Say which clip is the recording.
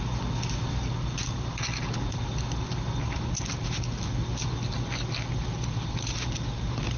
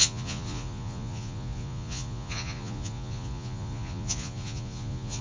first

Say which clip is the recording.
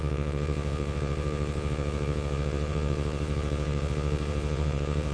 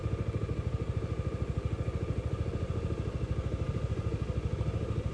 second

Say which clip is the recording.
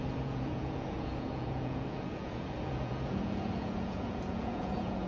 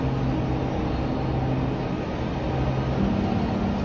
second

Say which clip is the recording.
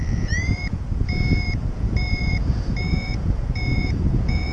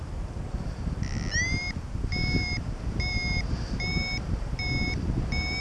second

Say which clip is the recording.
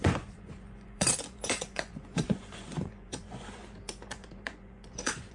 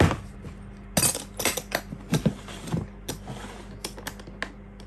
second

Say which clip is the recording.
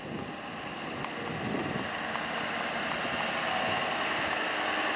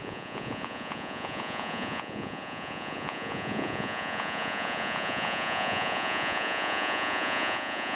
first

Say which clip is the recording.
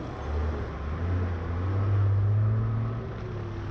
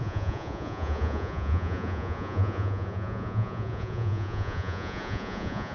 first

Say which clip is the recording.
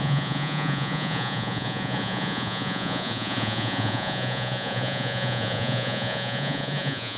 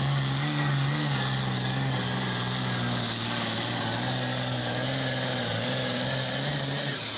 second